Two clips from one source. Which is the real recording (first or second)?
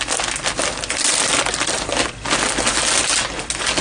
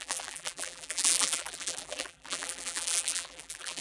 first